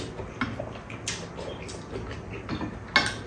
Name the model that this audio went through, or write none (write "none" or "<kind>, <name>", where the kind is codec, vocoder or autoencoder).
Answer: none